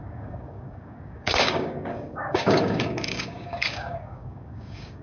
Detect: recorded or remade remade